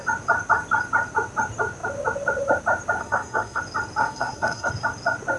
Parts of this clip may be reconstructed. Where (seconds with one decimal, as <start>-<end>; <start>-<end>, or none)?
3.0-3.6; 4.0-4.7